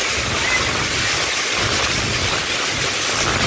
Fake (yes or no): no